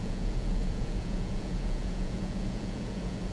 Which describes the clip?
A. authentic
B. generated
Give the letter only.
B